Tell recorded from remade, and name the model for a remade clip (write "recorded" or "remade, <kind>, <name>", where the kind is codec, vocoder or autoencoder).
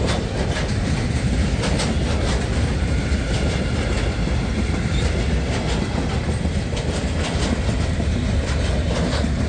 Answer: recorded